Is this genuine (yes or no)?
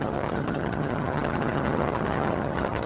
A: no